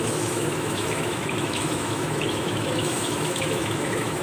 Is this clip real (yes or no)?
no